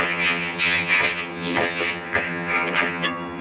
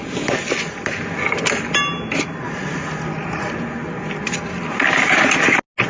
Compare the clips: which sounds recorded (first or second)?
second